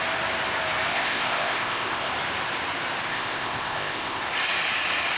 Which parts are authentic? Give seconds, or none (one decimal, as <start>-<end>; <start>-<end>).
0.0-0.9; 2.1-3.1; 4.2-5.2